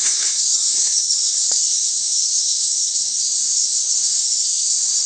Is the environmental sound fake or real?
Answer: fake